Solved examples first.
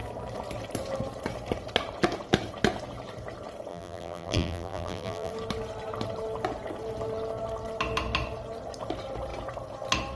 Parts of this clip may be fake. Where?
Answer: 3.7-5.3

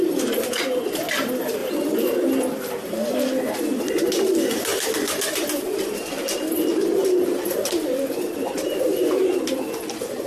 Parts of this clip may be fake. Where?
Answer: 1.6-2.3; 4.7-7.0